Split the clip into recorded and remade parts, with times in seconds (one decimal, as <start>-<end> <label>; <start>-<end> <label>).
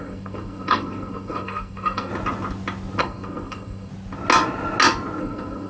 0.0-2.1 remade; 2.1-3.0 recorded; 3.0-3.9 remade; 3.9-5.2 recorded; 5.2-5.7 remade